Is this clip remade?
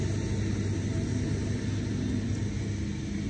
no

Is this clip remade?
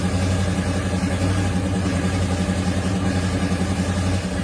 no